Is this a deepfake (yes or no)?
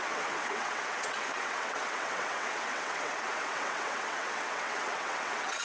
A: yes